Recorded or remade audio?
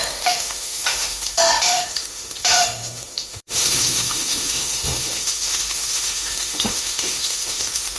remade